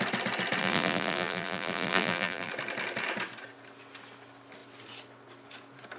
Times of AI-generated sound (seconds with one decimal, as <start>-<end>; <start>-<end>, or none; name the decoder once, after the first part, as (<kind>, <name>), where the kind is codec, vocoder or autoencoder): 0.6-2.5 (vocoder, BigVGAN v2)